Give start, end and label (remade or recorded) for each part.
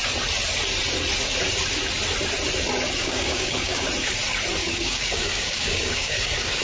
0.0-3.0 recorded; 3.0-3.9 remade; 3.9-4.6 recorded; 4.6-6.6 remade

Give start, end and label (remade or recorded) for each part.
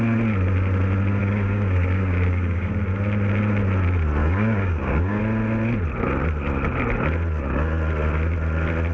0.0-1.2 recorded; 1.2-2.7 remade; 2.7-4.2 recorded; 4.2-5.2 remade; 5.2-8.9 recorded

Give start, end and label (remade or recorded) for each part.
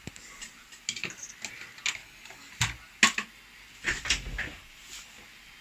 0.0-2.0 recorded; 2.0-2.5 remade; 2.5-5.6 recorded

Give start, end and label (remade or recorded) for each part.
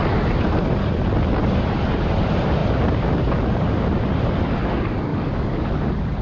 0.0-5.1 recorded; 5.1-5.7 remade; 5.7-6.2 recorded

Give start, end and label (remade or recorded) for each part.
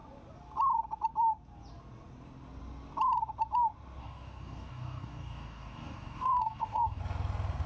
0.0-4.0 recorded; 4.0-7.0 remade; 7.0-7.7 recorded